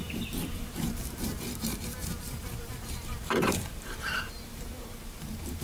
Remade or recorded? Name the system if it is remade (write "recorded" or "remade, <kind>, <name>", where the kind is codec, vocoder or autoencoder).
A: remade, vocoder, BigVGAN v2